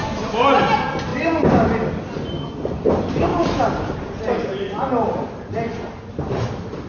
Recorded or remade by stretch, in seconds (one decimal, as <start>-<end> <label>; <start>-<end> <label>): 0.0-3.3 recorded; 3.3-4.9 remade; 4.9-5.7 recorded; 5.7-6.5 remade; 6.5-6.9 recorded